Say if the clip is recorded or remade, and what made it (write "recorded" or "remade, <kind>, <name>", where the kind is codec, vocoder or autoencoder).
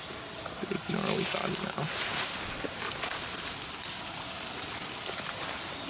remade, vocoder, BigVGAN v2